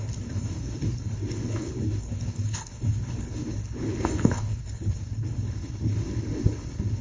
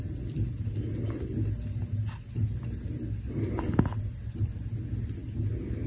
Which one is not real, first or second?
first